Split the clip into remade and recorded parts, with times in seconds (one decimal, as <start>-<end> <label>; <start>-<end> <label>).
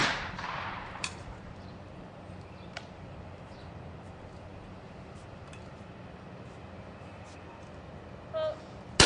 0.0-3.7 remade; 3.7-4.5 recorded; 4.5-5.8 remade; 5.8-9.1 recorded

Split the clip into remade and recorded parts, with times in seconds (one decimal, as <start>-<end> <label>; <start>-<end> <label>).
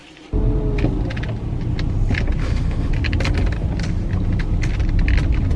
0.0-2.4 recorded; 2.4-2.9 remade; 2.9-5.6 recorded